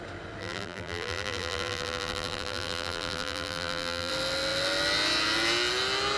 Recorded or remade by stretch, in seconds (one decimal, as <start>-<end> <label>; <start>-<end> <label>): 0.0-0.4 recorded; 0.4-4.1 remade; 4.1-6.2 recorded